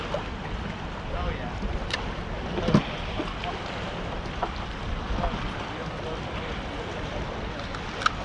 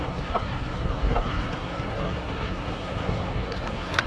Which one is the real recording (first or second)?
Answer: first